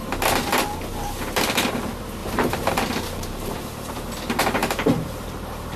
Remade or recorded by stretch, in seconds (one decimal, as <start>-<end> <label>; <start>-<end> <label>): 0.0-2.2 recorded; 2.2-2.7 remade; 2.7-4.6 recorded; 4.6-5.8 remade